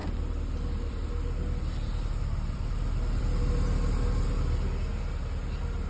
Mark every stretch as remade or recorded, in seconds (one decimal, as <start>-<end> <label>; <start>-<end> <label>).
0.0-3.5 remade; 3.5-5.9 recorded